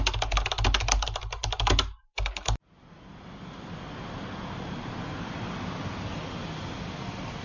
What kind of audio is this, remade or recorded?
recorded